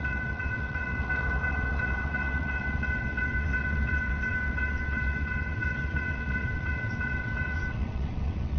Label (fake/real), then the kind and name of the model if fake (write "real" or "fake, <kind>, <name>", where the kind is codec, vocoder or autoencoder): fake, vocoder, WaveNeXt